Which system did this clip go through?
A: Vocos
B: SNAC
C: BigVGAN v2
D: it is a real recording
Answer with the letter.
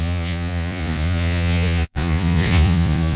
A